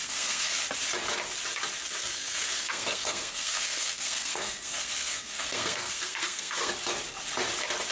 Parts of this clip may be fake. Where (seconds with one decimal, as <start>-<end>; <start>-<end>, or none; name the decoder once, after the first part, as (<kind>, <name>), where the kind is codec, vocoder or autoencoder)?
0.0-0.6 (codec, SNAC); 2.0-6.7